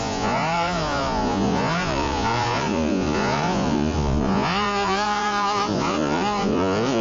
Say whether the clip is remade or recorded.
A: remade